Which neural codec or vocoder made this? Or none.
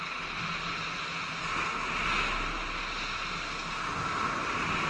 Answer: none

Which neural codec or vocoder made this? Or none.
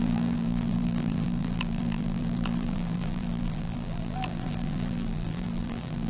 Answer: vocoder, BigVGAN v2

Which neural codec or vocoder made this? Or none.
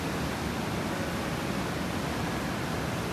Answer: none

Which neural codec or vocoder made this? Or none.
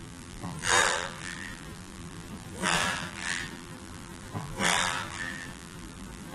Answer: vocoder, BigVGAN v2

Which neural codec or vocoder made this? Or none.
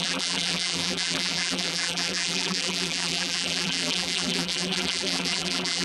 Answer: vocoder, BigVGAN v2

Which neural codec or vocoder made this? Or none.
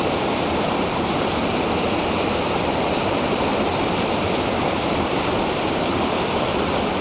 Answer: vocoder, BigVGAN v2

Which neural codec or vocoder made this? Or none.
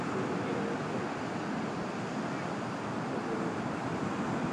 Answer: none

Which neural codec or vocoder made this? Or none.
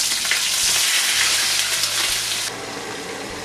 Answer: none